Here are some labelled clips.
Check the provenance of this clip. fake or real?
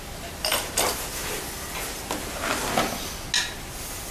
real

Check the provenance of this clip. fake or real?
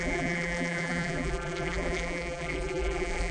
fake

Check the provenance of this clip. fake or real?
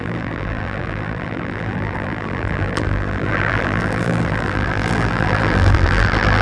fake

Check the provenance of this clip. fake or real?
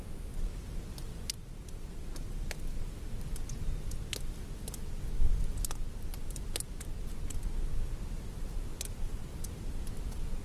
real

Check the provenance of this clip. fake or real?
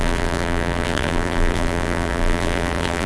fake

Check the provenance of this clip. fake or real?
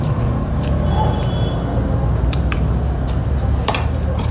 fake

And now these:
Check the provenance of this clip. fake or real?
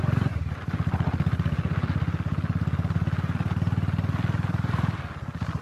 real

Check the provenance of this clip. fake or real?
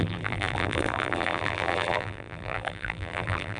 fake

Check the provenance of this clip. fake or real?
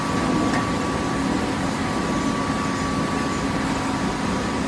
real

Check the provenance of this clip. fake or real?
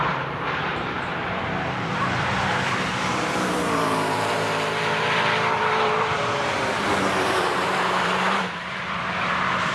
fake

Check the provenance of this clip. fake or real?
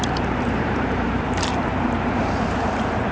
fake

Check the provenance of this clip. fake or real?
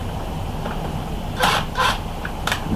fake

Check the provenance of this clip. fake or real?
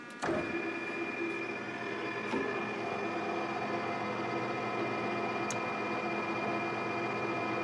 real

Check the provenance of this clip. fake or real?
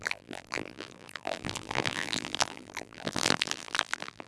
fake